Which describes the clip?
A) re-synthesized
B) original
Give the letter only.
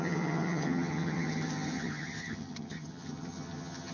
A